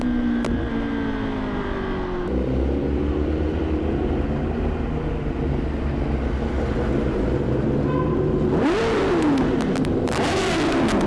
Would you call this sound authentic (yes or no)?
yes